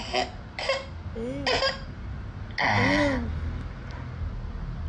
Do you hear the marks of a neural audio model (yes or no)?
no